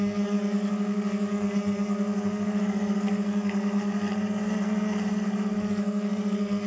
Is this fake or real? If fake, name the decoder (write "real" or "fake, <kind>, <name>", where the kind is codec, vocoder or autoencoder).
fake, codec, SNAC